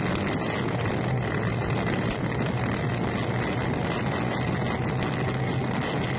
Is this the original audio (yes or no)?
yes